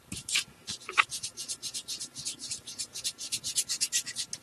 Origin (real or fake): real